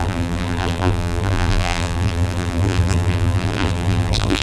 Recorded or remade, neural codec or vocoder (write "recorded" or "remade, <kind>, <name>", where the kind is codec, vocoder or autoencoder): remade, vocoder, BigVGAN v2